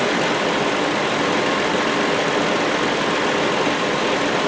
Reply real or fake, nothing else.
real